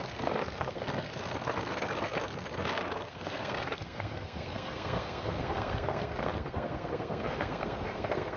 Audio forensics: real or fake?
fake